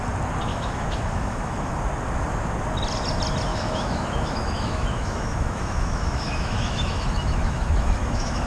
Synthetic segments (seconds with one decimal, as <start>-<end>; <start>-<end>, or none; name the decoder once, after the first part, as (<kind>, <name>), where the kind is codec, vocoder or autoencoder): 0.5-1.7 (autoencoder, DAC-VAE); 3.5-8.5